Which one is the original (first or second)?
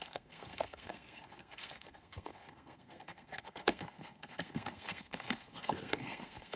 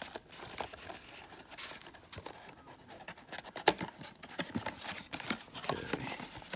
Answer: second